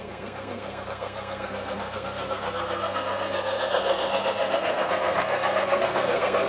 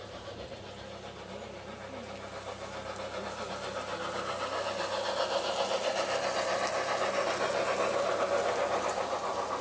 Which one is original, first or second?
second